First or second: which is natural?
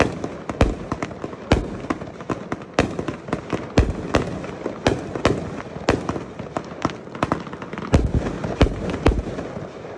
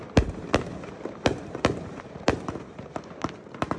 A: first